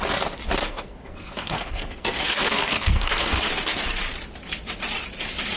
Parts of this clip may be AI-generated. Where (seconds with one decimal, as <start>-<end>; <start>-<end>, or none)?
0.6-3.5